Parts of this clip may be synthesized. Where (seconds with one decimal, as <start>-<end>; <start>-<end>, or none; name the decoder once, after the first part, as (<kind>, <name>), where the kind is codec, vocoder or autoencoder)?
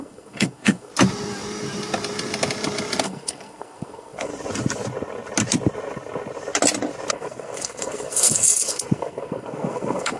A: 0.0-0.9 (codec, SNAC); 3.0-4.3; 7.1-10.2